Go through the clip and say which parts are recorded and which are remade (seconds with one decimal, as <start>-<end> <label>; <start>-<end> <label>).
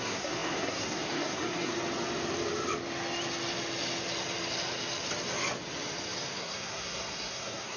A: 0.0-1.7 remade; 1.7-6.4 recorded; 6.4-7.8 remade